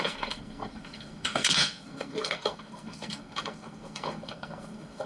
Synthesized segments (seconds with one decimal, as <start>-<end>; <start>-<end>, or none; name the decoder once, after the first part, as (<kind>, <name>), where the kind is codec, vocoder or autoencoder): 0.0-5.1 (codec, SNAC)